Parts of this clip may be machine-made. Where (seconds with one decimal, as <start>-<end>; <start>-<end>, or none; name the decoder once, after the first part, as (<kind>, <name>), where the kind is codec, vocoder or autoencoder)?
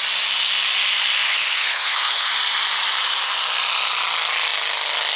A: 1.3-2.3 (codec, HILCodec)